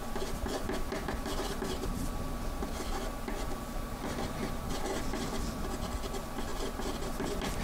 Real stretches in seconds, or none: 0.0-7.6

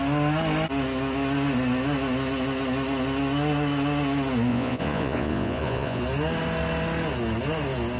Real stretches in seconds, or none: 0.0-4.5; 6.0-8.0

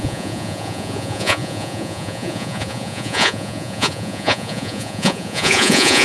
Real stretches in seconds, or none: none

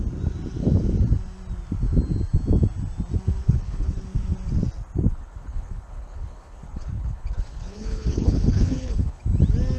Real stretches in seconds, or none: 0.0-3.4; 4.0-5.1; 9.2-9.8